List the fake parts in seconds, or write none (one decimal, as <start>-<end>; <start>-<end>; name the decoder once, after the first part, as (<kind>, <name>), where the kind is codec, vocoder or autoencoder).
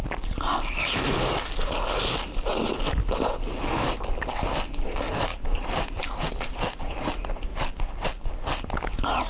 5.3-6.3 (vocoder, BigVGAN v2)